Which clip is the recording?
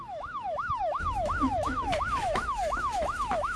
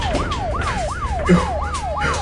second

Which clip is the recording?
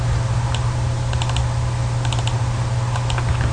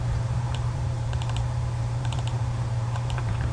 first